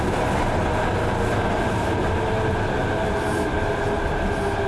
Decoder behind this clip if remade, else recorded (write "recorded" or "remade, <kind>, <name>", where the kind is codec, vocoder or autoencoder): recorded